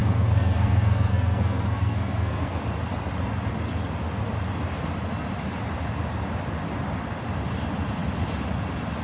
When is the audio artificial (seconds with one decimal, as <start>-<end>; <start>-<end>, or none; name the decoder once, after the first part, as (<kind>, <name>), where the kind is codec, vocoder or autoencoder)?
0.0-2.6 (codec, SNAC)